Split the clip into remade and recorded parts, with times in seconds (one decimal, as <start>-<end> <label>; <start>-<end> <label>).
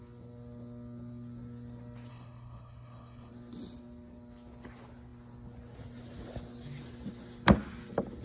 0.0-2.1 recorded; 2.1-3.3 remade; 3.3-8.2 recorded